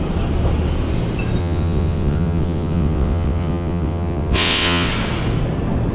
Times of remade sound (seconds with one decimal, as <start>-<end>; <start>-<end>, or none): 1.4-4.9

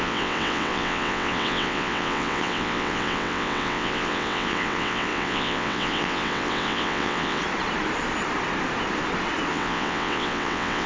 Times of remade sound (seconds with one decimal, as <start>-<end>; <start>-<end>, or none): 0.0-7.4; 9.5-10.9

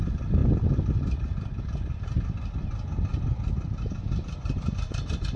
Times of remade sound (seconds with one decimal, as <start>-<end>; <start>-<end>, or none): none